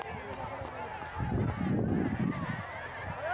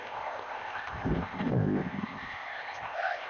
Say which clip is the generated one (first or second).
second